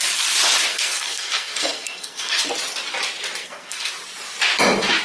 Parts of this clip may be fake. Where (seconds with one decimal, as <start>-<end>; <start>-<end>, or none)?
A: 0.7-2.4; 3.4-3.9

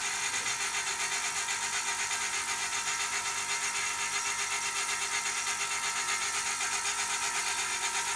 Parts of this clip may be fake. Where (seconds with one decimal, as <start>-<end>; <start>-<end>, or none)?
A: none

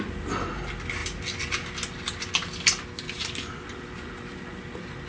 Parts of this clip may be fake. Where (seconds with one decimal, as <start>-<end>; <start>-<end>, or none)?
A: none

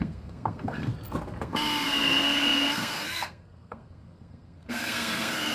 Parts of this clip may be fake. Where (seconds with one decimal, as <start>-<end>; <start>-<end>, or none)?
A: 0.0-0.9; 1.4-5.5

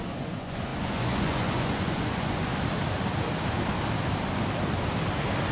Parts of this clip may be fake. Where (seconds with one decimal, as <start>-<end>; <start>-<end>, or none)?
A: 0.0-2.5